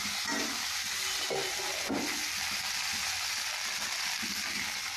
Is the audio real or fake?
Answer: real